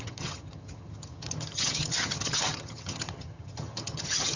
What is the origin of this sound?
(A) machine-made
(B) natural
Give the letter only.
A